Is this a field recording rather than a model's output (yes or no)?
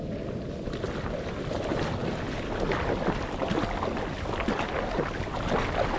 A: yes